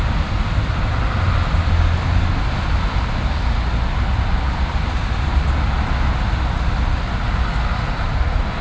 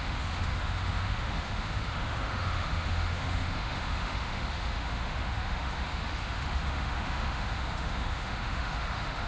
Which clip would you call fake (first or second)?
second